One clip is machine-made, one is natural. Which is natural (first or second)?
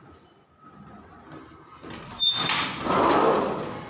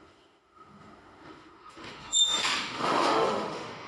first